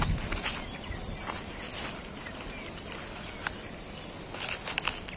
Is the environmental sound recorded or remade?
recorded